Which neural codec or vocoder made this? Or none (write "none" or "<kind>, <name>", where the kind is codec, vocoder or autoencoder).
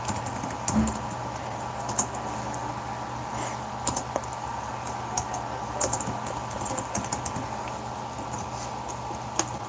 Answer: none